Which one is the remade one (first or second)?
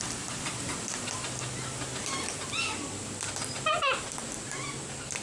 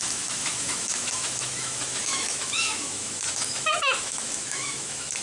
second